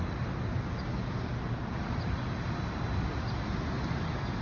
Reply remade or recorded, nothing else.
recorded